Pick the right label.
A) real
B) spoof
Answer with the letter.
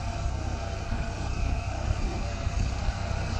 B